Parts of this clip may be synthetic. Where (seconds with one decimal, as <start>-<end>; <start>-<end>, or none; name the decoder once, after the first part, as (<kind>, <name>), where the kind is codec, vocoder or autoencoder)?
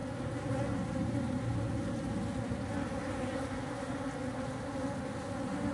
none